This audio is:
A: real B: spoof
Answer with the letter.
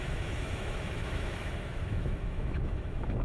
B